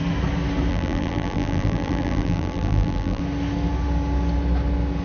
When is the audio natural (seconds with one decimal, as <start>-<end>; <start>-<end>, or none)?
0.0-0.7; 3.2-5.0